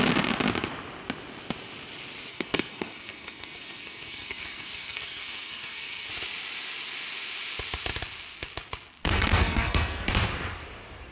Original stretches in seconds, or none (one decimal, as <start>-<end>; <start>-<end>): 0.0-2.3; 6.1-9.0; 10.1-11.1